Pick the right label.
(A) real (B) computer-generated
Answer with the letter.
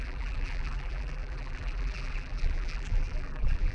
B